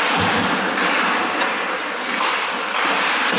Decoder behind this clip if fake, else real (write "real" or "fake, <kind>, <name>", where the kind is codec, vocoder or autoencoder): real